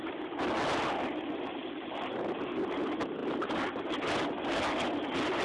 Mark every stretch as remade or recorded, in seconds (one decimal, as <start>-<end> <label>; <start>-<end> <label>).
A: 0.0-5.4 recorded